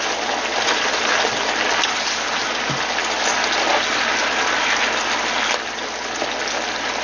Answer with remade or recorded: recorded